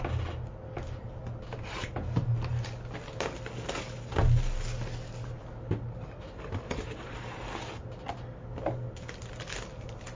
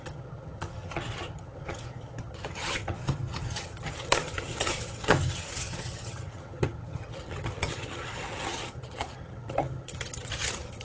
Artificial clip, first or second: second